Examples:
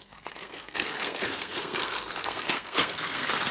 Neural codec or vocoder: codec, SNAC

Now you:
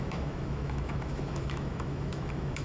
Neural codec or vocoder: autoencoder, DAC-VAE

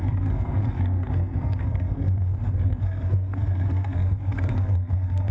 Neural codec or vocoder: codec, SNAC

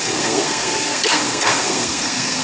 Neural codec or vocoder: codec, SNAC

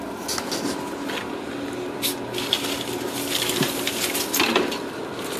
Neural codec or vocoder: none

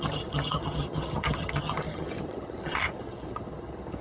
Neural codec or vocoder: vocoder, HiFi-GAN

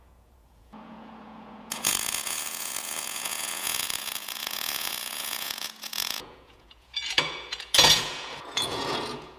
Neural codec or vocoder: vocoder, Vocos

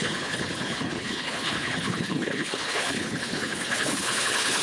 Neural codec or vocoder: codec, HILCodec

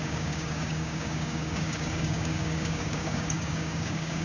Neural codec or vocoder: codec, DAC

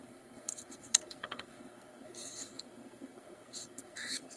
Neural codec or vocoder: codec, SNAC